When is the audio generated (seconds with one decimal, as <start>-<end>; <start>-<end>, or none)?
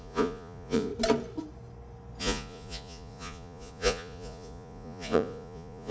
0.0-0.9; 2.2-5.9